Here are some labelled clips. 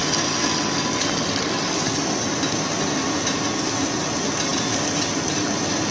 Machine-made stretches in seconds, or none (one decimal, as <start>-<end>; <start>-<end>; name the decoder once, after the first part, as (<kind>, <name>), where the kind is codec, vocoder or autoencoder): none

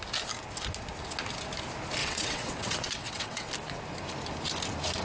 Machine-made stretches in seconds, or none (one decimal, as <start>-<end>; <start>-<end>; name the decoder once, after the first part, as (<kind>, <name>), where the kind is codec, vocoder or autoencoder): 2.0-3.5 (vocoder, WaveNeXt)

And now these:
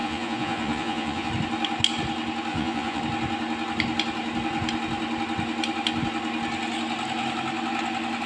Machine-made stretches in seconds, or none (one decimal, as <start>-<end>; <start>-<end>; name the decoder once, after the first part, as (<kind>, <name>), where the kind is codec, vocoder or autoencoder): 0.0-1.3 (vocoder, Vocos); 2.5-3.0

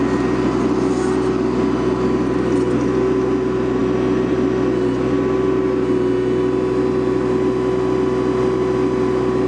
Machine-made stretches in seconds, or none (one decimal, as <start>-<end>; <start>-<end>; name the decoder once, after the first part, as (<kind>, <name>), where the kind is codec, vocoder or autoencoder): none

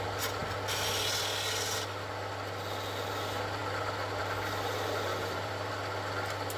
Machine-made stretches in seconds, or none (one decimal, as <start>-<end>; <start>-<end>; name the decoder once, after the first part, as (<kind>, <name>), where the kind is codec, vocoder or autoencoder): 5.1-5.7 (vocoder, BigVGAN v2)